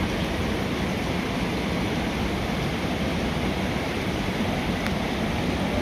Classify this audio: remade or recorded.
recorded